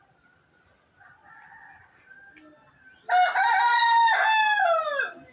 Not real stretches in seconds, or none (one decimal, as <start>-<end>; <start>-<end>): none